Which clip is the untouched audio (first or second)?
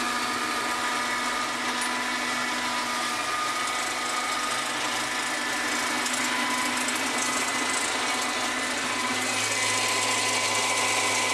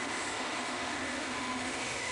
first